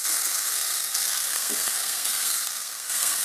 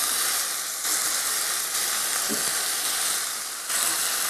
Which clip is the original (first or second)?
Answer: second